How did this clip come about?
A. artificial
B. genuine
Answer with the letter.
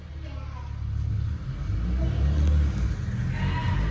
B